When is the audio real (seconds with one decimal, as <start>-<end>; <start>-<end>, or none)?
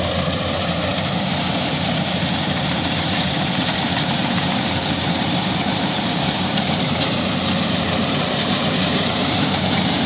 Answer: none